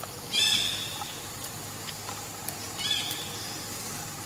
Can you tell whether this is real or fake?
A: real